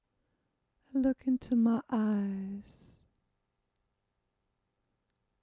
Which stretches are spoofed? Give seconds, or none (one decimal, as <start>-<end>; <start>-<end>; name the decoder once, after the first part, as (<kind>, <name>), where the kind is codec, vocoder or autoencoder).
none